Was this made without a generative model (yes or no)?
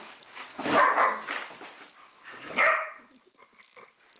yes